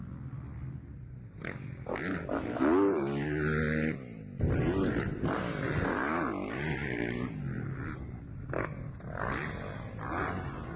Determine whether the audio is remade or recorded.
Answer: recorded